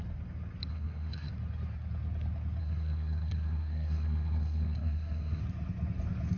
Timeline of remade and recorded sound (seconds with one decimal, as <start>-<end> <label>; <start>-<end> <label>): 0.0-0.7 recorded; 0.7-1.3 remade; 1.3-2.6 recorded; 2.6-5.4 remade; 5.4-6.4 recorded